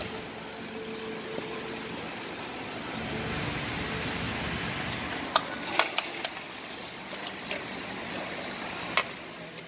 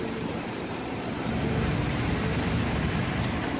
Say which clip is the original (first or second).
first